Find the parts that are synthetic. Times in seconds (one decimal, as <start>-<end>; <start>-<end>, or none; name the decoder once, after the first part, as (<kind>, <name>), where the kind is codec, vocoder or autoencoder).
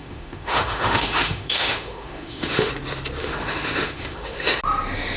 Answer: 0.0-2.7 (autoencoder, DAC-VAE); 3.2-4.6